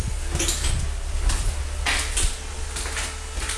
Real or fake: real